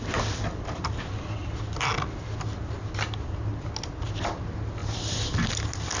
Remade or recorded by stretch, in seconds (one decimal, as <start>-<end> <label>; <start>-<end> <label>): 0.0-6.0 recorded